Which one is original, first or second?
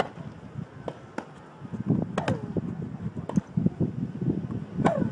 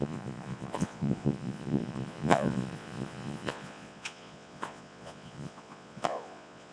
first